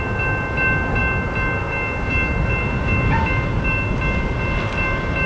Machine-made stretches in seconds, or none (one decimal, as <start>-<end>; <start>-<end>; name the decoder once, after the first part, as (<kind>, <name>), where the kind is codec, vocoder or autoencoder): none